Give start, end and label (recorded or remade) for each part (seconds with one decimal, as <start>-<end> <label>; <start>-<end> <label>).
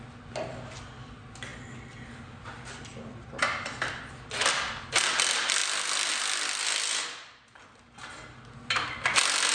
0.0-9.5 recorded